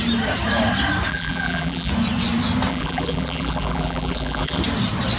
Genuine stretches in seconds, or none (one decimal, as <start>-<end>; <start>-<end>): 0.0-1.1; 1.9-2.7; 4.6-5.2